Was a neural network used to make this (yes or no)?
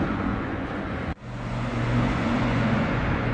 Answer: yes